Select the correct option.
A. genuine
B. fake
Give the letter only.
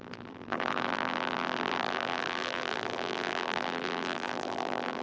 B